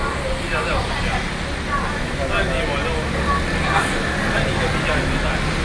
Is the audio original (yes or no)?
yes